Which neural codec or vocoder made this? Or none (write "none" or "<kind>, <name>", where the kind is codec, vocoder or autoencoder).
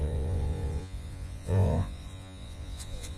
vocoder, Vocos